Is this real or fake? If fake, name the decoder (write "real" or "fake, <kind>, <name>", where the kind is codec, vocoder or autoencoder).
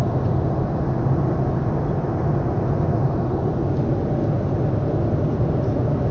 real